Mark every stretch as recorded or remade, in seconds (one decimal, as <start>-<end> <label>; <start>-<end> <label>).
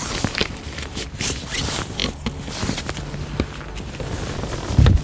0.0-0.4 recorded; 0.4-1.2 remade; 1.2-5.0 recorded